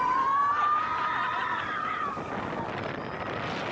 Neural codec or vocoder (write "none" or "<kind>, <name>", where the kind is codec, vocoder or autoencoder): none